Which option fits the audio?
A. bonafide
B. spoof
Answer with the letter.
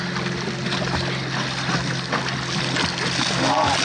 A